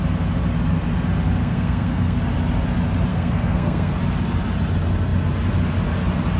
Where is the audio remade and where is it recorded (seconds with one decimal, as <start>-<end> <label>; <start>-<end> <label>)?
0.0-1.4 recorded; 1.4-2.2 remade; 2.2-3.1 recorded; 3.1-4.0 remade; 4.0-6.4 recorded